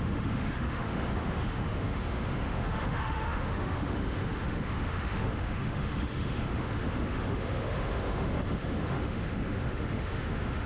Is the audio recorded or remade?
remade